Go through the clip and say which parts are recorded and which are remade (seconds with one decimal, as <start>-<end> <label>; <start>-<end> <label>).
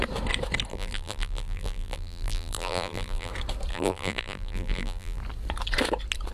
0.0-0.7 recorded; 0.7-3.3 remade; 3.3-3.7 recorded; 3.7-5.2 remade; 5.2-6.3 recorded